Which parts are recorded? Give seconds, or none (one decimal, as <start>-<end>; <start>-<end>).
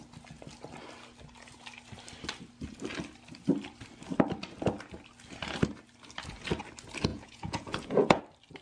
0.0-7.1; 8.2-8.6